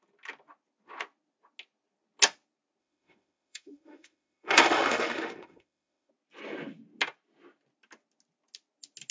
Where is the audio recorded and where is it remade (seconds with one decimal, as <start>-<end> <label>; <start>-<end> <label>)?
0.0-2.8 recorded; 2.8-6.1 remade; 6.1-9.1 recorded